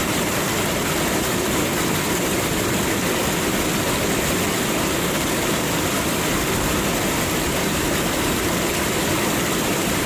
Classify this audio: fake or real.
real